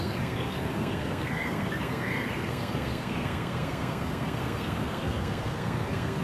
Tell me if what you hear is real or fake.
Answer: fake